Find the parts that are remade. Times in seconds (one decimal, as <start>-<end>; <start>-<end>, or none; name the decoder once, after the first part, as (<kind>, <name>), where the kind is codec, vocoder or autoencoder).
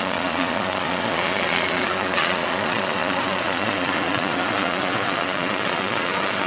0.0-6.5 (vocoder, Vocos)